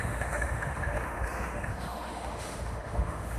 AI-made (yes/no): yes